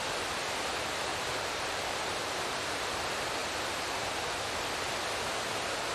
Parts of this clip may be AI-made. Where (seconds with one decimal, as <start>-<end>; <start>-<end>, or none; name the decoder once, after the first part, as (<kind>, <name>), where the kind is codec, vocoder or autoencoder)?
1.1-2.4 (vocoder, BigVGAN v2)